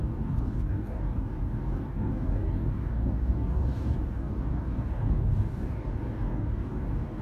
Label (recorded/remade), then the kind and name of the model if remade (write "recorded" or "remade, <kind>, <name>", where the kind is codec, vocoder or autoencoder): remade, codec, DAC